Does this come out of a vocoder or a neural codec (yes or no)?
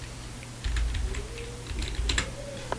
no